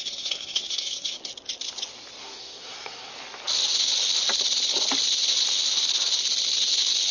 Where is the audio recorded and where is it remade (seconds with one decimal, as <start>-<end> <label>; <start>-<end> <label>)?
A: 0.0-1.3 remade; 1.3-2.2 recorded; 2.2-3.1 remade; 3.1-7.1 recorded